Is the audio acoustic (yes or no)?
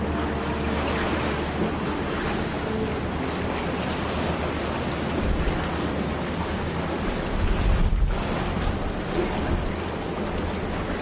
yes